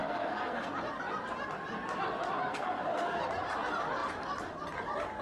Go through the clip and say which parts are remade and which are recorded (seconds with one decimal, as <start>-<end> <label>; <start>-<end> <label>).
0.0-0.7 remade; 0.7-2.5 recorded; 2.5-3.2 remade; 3.2-5.2 recorded